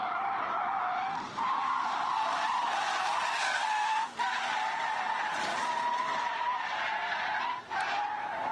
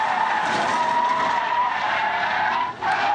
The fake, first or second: first